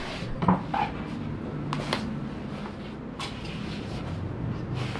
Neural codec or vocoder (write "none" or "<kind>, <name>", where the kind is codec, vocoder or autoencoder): none